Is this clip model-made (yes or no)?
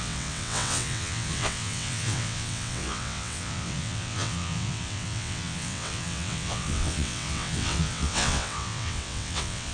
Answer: yes